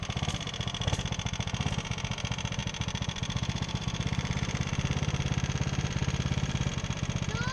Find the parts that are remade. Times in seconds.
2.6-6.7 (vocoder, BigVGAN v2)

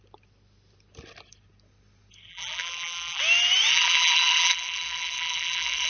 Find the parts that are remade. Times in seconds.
2.3-3.2 (vocoder, BigVGAN v2); 3.7-5.9

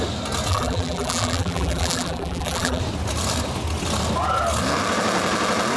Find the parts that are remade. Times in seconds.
0.5-2.8 (vocoder, BigVGAN v2)

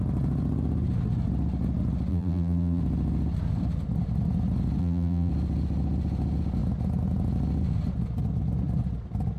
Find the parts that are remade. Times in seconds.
2.1-2.8 (vocoder, BigVGAN v2); 4.8-5.3